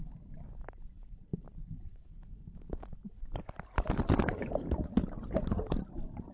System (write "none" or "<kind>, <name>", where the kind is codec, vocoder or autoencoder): vocoder, BigVGAN v2